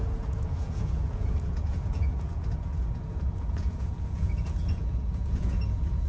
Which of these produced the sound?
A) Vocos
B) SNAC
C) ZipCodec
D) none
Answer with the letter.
A